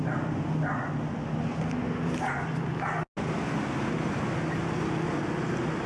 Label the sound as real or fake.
real